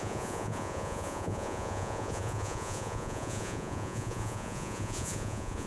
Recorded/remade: remade